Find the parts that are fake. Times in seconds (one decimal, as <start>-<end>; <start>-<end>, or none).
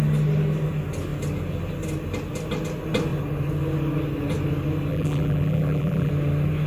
4.9-6.1